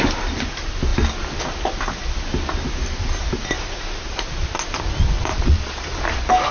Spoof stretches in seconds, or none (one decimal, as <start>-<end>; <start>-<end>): 5.3-6.0

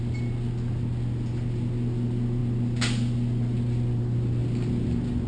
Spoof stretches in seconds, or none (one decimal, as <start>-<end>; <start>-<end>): none